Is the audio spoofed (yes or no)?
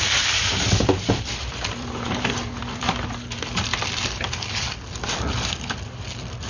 yes